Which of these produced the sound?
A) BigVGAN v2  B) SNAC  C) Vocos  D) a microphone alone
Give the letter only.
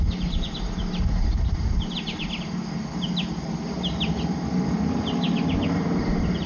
D